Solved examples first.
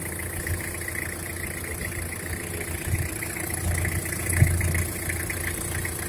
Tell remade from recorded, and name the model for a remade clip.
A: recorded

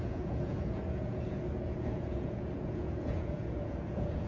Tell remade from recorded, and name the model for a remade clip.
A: remade, vocoder, Vocos